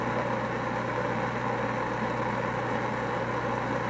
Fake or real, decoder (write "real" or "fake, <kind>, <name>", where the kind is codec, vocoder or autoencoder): real